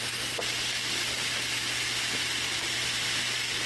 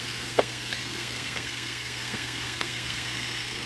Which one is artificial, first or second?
second